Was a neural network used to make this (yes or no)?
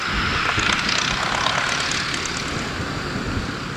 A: no